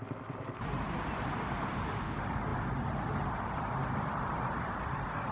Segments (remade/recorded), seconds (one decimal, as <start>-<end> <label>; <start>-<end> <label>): 0.0-2.5 remade; 2.5-3.3 recorded; 3.3-5.3 remade